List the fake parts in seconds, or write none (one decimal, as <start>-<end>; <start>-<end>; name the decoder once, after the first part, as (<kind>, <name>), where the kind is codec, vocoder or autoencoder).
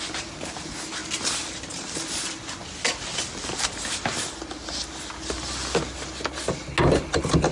none